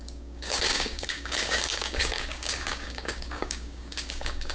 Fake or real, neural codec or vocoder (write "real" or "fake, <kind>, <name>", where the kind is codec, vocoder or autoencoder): fake, codec, DAC